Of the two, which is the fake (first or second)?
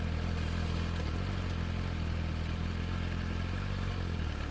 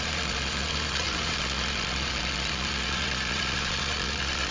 second